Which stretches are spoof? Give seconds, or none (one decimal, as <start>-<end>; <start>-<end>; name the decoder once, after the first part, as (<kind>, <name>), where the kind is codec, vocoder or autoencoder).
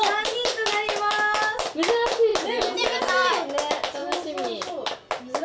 none